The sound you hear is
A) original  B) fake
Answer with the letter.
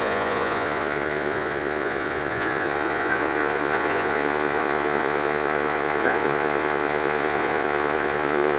B